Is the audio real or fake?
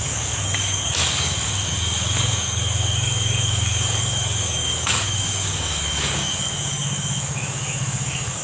fake